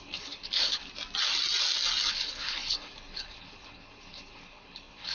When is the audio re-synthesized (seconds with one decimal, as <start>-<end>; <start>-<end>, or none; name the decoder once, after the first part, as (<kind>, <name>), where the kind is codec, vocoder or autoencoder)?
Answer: 0.0-0.8 (codec, HILCodec); 2.1-5.1